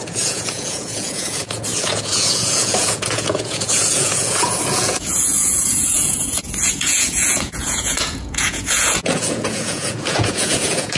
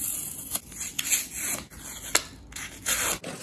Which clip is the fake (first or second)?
first